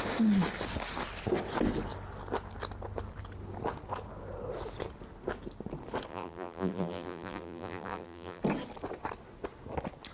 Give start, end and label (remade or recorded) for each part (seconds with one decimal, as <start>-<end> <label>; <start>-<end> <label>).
0.0-6.1 recorded; 6.1-8.4 remade; 8.4-10.1 recorded